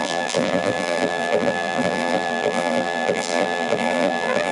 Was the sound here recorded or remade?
remade